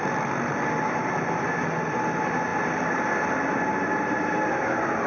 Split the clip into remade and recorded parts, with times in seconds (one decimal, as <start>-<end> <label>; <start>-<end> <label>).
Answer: 0.0-5.1 recorded

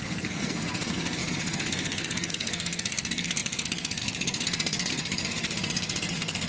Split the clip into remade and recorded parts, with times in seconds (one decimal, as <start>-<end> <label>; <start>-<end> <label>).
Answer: 0.0-6.5 remade

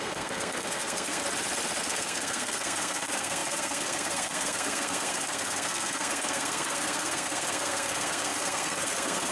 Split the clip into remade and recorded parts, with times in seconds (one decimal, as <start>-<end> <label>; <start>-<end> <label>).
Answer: 0.0-1.2 remade; 1.2-1.8 recorded; 1.8-9.3 remade

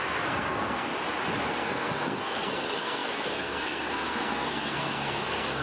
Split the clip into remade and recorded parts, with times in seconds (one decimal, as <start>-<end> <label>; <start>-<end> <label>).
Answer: 0.0-0.9 remade; 0.9-1.5 recorded; 1.5-5.6 remade

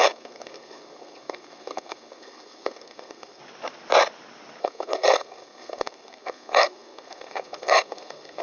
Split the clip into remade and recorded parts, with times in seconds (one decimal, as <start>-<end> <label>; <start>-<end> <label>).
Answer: 0.0-3.4 remade; 3.4-4.6 recorded; 4.6-8.4 remade

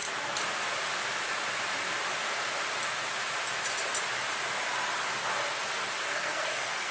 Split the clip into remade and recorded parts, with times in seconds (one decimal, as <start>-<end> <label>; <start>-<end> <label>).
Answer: 0.0-6.1 recorded; 6.1-6.9 remade